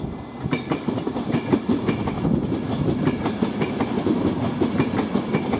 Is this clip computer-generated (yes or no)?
no